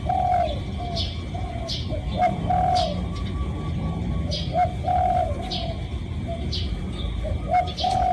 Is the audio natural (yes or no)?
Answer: yes